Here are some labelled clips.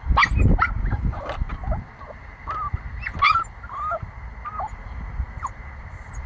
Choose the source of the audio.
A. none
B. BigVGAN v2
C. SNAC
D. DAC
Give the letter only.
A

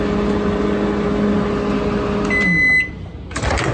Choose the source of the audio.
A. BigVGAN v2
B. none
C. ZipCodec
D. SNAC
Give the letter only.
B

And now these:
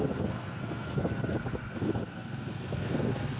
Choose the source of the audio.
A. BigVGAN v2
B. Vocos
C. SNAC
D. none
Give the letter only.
C